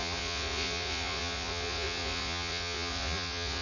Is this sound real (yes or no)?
no